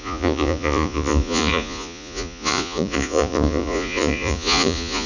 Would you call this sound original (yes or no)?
no